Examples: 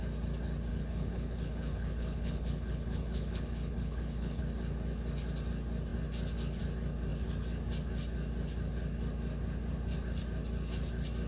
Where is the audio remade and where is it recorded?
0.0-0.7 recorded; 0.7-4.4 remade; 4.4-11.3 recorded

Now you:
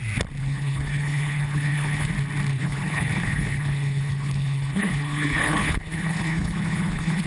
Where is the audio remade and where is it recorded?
0.0-0.4 recorded; 0.4-2.1 remade; 2.1-2.5 recorded; 2.5-7.3 remade